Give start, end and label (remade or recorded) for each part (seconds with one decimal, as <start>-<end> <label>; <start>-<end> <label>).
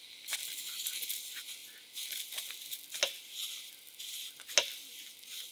0.0-5.5 recorded